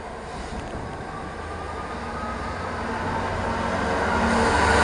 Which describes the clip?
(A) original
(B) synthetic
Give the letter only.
A